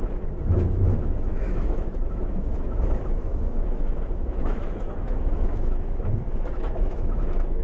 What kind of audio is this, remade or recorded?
remade